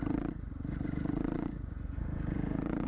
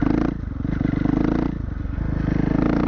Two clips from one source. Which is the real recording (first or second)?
second